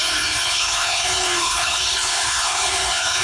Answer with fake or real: fake